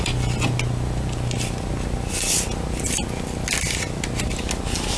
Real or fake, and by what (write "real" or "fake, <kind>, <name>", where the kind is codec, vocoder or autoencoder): real